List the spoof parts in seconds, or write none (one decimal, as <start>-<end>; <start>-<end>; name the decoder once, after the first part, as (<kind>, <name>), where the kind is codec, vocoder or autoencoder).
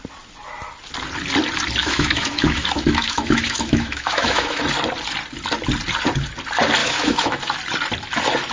1.8-4.6 (autoencoder, DAC-VAE); 6.8-7.4